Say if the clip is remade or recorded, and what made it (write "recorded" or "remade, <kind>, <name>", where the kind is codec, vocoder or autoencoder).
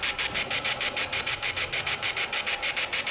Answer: recorded